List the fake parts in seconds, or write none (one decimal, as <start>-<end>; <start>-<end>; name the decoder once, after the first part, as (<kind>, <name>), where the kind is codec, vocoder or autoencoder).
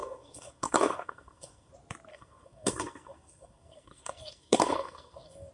0.0-1.7 (codec, SNAC); 2.1-5.5